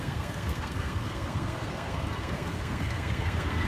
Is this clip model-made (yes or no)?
yes